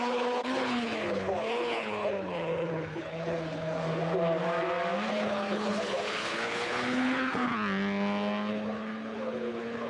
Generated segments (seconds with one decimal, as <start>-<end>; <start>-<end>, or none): 0.0-3.8; 5.1-7.5; 8.5-9.9